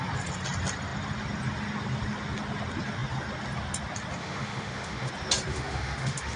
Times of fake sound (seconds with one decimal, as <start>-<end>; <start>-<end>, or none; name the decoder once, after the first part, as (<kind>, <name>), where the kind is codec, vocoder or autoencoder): 4.2-5.1 (autoencoder, DAC-VAE); 5.5-6.4